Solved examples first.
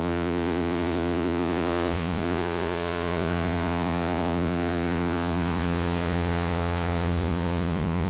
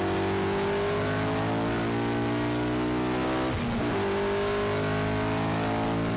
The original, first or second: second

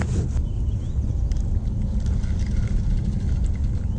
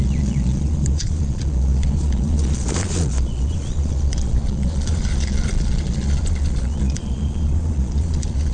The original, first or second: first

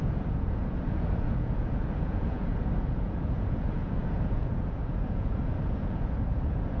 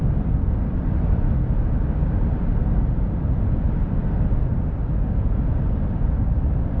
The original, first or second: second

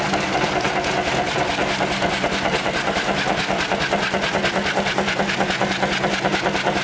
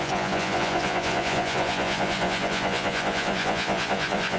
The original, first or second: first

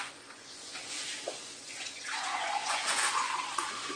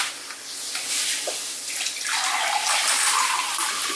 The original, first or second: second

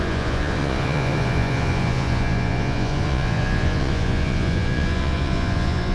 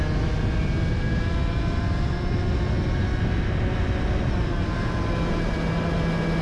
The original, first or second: second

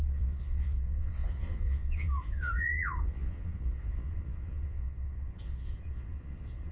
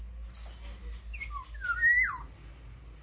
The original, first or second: second